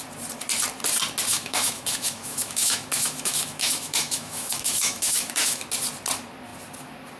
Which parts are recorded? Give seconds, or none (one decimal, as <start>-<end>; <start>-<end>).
0.0-1.3; 5.6-7.2